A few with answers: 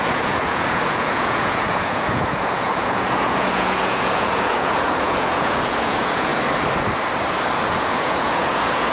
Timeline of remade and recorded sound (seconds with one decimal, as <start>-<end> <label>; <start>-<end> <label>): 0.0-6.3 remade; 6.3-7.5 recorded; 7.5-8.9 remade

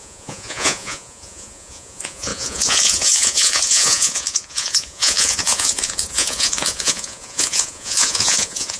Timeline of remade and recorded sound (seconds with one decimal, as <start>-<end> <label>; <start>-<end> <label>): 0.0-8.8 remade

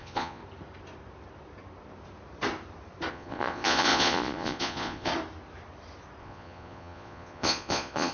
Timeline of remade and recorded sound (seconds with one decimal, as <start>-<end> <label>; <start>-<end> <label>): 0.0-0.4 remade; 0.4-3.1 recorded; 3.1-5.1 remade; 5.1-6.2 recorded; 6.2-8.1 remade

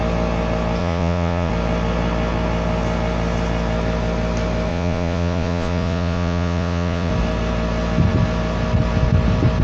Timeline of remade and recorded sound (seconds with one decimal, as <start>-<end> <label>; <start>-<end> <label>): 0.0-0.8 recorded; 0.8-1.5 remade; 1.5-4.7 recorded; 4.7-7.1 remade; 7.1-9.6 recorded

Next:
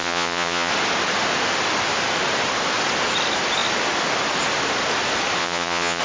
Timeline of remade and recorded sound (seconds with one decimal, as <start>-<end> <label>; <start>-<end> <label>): 0.0-0.7 remade; 0.7-5.4 recorded; 5.4-6.0 remade

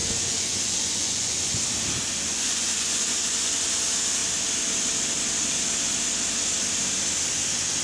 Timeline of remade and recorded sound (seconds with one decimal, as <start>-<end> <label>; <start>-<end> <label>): 0.0-1.6 remade; 1.6-2.3 recorded; 2.3-3.6 remade; 3.6-7.8 recorded

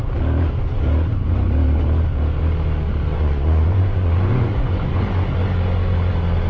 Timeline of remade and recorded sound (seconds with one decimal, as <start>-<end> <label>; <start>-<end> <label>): 0.0-3.1 recorded; 3.1-5.0 remade; 5.0-6.5 recorded